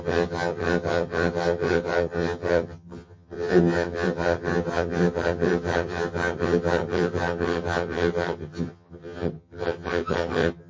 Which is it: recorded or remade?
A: remade